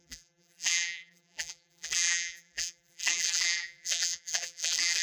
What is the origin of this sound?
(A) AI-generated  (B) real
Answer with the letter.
A